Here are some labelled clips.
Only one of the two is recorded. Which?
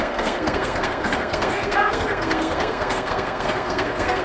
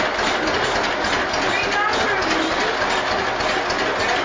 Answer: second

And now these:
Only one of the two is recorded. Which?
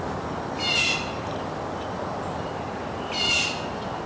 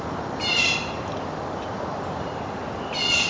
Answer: first